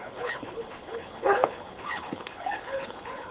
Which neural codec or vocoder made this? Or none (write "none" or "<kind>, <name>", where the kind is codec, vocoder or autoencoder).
codec, HILCodec